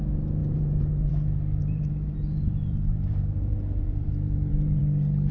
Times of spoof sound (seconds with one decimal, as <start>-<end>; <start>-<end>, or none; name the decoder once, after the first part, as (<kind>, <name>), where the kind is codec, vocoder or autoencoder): 0.4-1.1 (vocoder, BigVGAN v2); 1.6-4.8